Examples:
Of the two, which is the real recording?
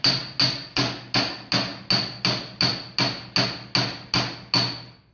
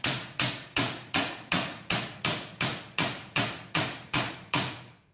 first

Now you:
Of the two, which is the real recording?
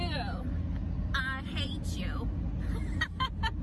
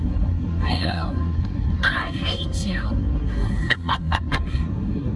first